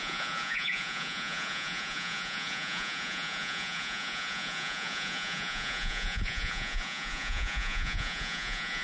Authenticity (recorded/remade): remade